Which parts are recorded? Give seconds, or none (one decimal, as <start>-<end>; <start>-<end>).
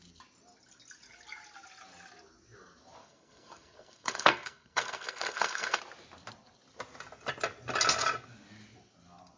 0.0-3.0; 5.8-9.4